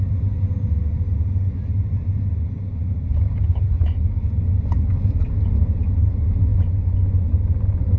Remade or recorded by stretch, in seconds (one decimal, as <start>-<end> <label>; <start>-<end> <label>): 0.0-6.5 recorded; 6.5-7.3 remade; 7.3-8.0 recorded